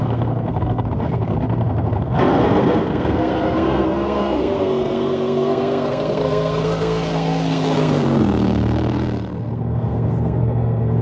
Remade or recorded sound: remade